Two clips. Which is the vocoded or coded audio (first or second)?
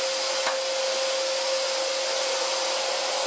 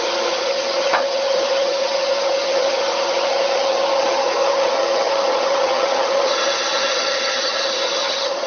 second